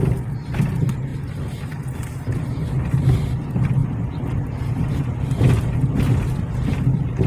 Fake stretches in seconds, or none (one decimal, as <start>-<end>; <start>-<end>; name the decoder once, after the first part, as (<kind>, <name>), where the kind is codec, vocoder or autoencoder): none